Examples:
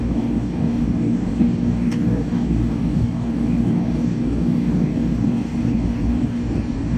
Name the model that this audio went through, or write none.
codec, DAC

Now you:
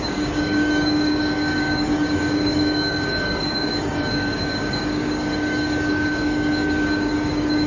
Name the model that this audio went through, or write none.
codec, DAC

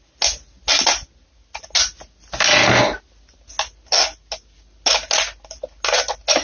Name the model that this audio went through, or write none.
none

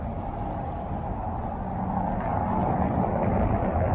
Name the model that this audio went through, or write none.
none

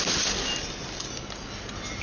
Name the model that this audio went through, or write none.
none